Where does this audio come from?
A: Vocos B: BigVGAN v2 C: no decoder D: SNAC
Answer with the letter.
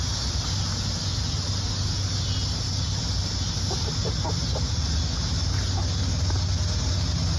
C